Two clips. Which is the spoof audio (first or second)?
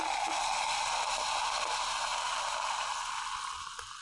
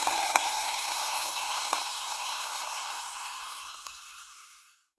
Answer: second